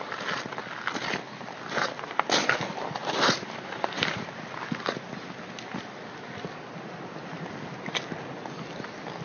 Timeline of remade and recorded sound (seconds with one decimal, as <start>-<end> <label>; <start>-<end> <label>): 0.0-3.0 recorded; 3.0-4.3 remade; 4.3-9.2 recorded